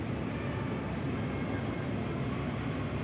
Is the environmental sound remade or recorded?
recorded